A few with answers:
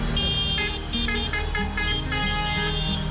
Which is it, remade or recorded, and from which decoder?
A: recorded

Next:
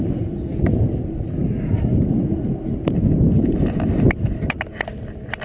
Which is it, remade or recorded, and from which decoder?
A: recorded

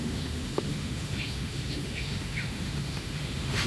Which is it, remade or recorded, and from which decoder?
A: remade, autoencoder, DAC-VAE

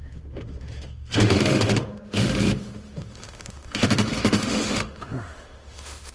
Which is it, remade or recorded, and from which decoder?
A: remade, autoencoder, DAC-VAE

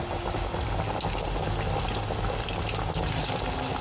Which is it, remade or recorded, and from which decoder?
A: recorded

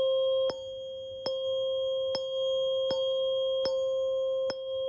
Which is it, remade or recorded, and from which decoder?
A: recorded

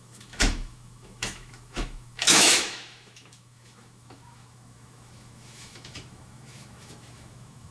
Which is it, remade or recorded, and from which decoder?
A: remade, autoencoder, DAC-VAE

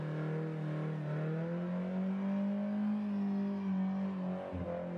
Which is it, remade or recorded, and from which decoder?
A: recorded